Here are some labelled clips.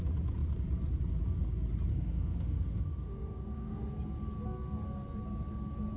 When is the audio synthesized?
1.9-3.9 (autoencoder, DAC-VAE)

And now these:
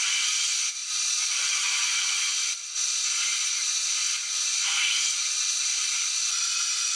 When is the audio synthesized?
none

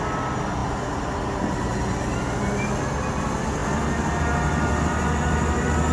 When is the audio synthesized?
none

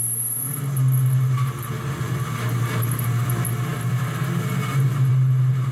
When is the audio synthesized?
none

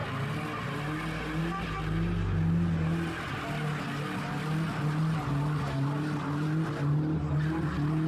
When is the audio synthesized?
none

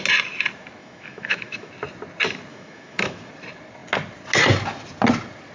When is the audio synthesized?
0.8-1.7 (autoencoder, DAC-VAE); 2.5-3.3

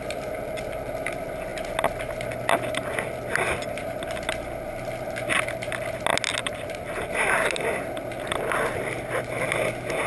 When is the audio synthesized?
none

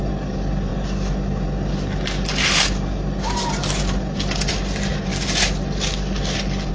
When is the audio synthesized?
none